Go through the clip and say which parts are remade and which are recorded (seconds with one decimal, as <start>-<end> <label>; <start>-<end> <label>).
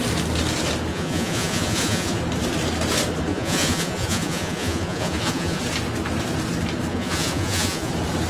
0.0-0.9 recorded; 0.9-2.2 remade; 2.2-3.3 recorded; 3.3-5.6 remade; 5.6-6.9 recorded; 6.9-7.9 remade; 7.9-8.3 recorded